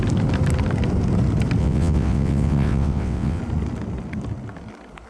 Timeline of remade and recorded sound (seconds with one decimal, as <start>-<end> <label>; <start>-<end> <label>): 0.0-1.6 recorded; 1.6-3.4 remade; 3.4-5.1 recorded